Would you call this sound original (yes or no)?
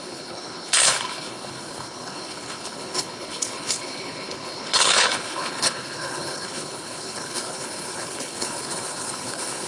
no